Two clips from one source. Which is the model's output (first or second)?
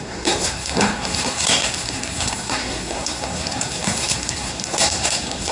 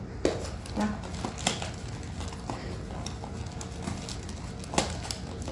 first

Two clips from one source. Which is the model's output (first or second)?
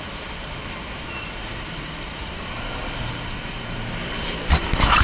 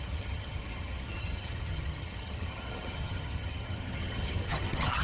second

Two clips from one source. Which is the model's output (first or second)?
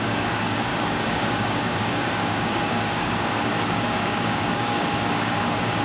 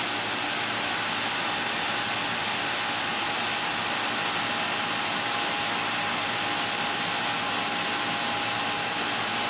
first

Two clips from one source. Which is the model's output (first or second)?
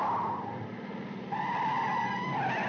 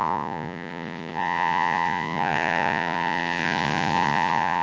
second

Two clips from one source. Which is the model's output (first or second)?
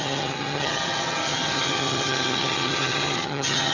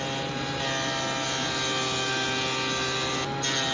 first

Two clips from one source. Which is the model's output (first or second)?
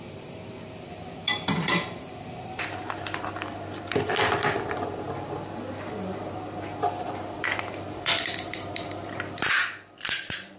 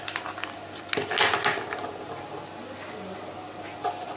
first